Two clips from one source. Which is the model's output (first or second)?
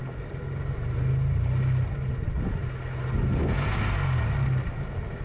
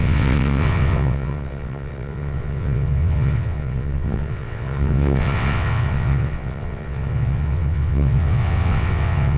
second